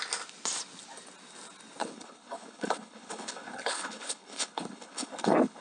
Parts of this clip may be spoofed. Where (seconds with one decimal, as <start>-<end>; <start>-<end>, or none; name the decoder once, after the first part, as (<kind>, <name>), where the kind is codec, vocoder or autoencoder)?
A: 1.8-5.6 (codec, HILCodec)